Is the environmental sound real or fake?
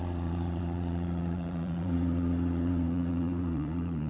fake